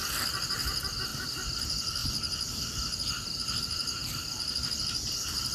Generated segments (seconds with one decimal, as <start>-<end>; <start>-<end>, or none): 1.1-1.6; 2.0-3.6; 4.0-4.8